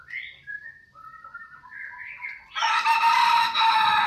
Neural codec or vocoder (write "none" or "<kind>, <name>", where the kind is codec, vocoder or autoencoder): vocoder, BigVGAN v2